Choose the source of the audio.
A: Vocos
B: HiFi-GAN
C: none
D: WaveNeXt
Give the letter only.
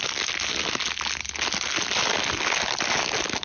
C